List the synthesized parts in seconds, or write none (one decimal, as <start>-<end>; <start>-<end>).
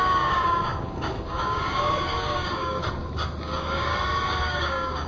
0.0-2.8; 3.4-3.9; 4.4-5.1